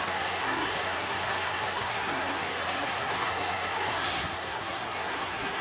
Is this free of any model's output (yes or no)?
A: no